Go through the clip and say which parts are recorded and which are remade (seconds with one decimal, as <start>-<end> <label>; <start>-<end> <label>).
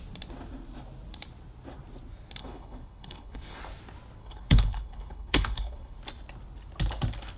0.0-2.4 recorded; 2.4-3.6 remade; 3.6-4.2 recorded; 4.2-6.0 remade; 6.0-7.4 recorded